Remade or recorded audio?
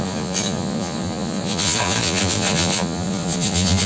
remade